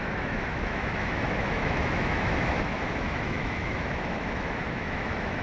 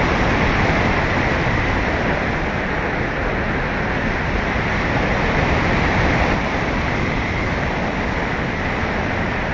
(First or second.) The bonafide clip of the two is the second